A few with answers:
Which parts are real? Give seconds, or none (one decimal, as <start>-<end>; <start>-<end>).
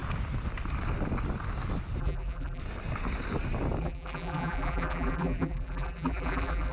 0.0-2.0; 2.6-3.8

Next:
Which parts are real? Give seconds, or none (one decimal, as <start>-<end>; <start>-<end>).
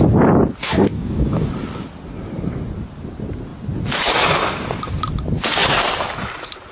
0.0-0.6; 1.5-6.7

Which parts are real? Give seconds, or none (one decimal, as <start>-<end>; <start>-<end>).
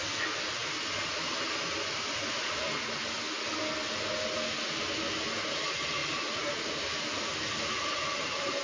0.0-8.6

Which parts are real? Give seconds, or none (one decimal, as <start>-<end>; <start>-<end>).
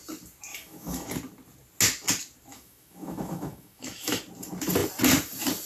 0.0-0.5; 1.1-2.5; 4.2-5.7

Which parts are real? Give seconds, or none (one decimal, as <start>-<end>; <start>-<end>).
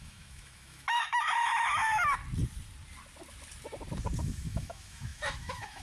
2.2-4.2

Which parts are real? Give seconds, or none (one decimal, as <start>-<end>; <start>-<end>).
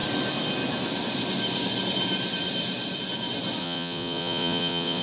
0.0-3.6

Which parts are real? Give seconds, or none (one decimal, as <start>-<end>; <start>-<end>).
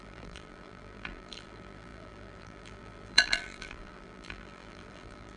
none